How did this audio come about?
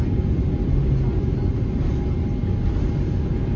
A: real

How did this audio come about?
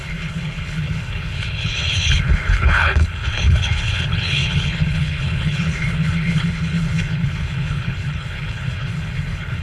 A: fake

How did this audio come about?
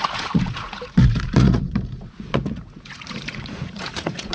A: fake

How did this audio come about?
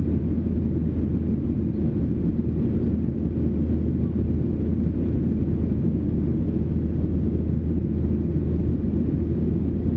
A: real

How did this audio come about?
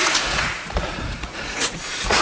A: fake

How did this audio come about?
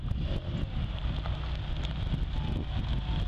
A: real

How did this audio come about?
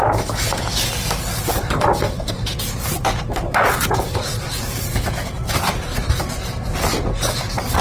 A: real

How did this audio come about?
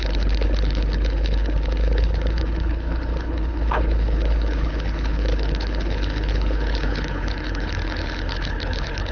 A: fake